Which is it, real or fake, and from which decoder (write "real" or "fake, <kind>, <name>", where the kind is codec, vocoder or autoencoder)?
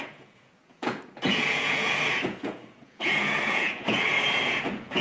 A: fake, vocoder, Vocos